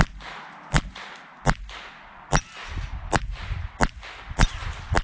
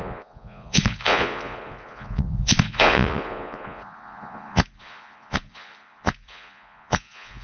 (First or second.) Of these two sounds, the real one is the first